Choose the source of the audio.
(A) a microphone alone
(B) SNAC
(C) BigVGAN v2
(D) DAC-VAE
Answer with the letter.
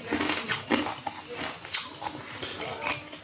A